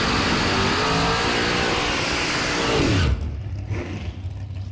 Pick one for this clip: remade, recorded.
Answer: recorded